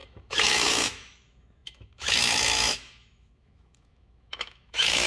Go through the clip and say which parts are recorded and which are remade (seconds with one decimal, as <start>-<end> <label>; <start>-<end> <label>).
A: 0.0-5.1 remade